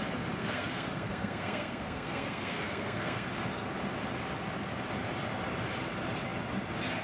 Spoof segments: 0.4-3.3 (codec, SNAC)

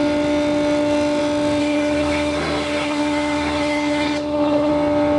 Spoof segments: 1.6-4.7 (codec, SNAC)

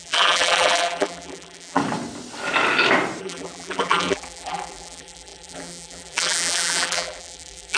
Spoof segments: 0.0-1.8 (vocoder, BigVGAN v2); 3.2-7.8